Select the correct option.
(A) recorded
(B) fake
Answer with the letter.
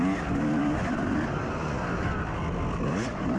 A